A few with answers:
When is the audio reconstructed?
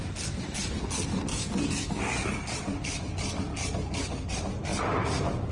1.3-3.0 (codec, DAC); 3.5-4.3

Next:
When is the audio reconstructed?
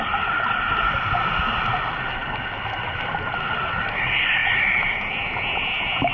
none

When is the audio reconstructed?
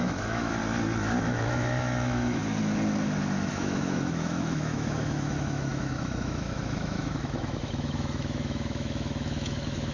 0.0-0.6 (autoencoder, DAC-VAE); 1.2-2.4; 3.5-9.9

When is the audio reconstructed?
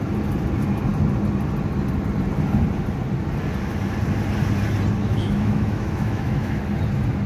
5.0-6.6 (autoencoder, DAC-VAE)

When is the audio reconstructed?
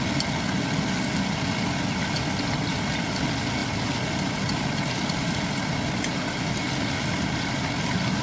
none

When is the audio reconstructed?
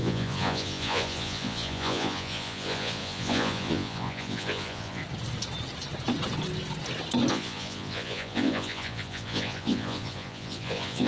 0.0-5.0 (vocoder, Vocos); 7.3-11.1